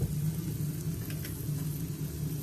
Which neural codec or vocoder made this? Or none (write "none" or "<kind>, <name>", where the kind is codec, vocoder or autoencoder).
none